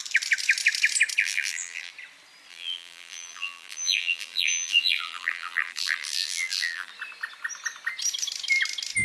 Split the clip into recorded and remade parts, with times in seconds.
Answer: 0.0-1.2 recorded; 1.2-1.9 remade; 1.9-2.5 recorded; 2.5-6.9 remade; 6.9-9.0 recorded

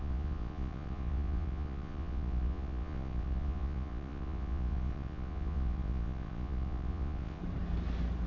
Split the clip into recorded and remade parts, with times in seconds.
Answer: 0.0-7.4 remade; 7.4-8.3 recorded

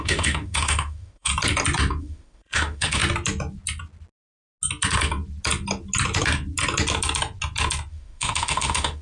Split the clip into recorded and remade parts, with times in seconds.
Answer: 0.0-1.3 remade; 1.3-2.0 recorded; 2.0-3.0 remade; 3.0-7.9 recorded; 7.9-9.0 remade